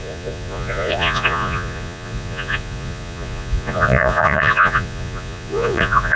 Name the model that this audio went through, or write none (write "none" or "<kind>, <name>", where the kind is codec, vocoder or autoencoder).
vocoder, Vocos